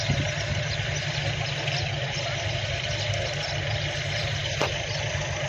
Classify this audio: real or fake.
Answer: real